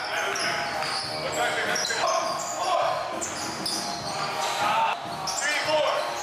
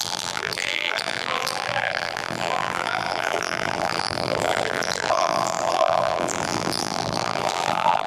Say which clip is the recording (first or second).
first